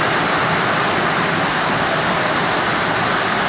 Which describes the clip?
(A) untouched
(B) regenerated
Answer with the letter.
A